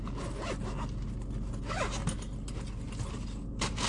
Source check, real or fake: real